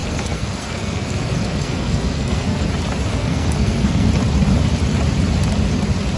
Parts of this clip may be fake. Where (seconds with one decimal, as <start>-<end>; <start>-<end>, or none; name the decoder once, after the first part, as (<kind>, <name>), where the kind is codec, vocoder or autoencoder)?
0.0-2.7 (codec, SNAC); 3.1-4.1